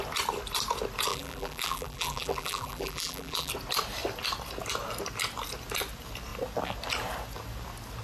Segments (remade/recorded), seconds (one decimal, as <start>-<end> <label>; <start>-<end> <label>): 0.0-1.1 recorded; 1.1-3.5 remade; 3.5-8.0 recorded